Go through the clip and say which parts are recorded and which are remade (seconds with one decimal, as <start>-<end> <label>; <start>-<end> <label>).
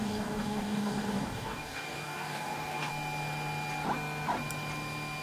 0.0-2.9 remade; 2.9-5.2 recorded